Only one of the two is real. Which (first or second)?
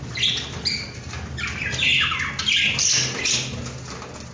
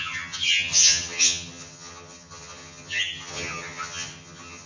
first